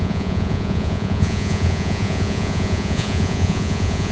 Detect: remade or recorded remade